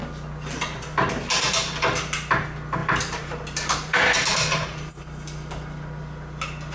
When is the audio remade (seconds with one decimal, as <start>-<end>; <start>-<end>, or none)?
2.8-5.0